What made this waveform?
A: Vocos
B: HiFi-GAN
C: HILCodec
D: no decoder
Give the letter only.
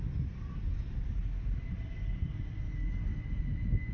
D